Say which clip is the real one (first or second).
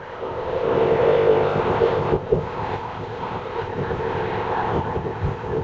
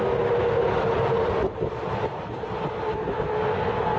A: second